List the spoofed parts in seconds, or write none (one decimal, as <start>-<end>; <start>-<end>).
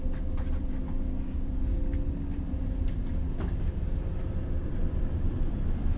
none